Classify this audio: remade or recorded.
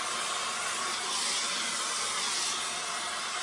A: recorded